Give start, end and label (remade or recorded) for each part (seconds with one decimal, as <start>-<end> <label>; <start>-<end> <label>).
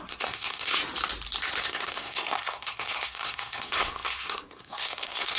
0.0-0.8 remade; 0.8-1.6 recorded; 1.6-5.4 remade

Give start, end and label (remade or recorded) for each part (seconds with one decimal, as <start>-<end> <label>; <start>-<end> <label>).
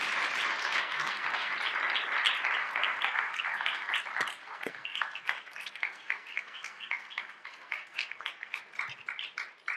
0.0-0.5 recorded; 0.5-1.5 remade; 1.5-2.6 recorded; 2.6-3.9 remade; 3.9-4.3 recorded; 4.3-8.6 remade; 8.6-9.8 recorded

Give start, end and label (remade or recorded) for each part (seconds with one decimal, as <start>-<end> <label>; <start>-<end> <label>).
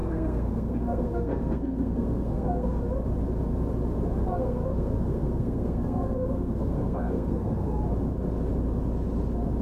0.0-2.8 remade; 2.8-4.2 recorded; 4.2-7.8 remade; 7.8-9.6 recorded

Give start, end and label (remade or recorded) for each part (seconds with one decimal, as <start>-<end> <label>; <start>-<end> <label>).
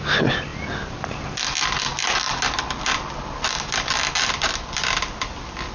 0.0-5.7 recorded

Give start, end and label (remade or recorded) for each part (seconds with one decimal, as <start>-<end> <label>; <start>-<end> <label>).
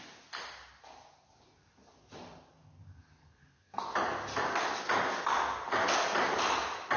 0.0-3.2 recorded; 3.2-3.8 remade; 3.8-7.0 recorded